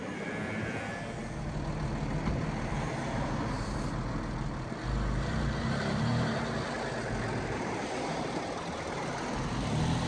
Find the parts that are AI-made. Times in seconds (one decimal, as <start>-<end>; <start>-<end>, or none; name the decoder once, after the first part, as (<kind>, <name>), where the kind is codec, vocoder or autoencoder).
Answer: none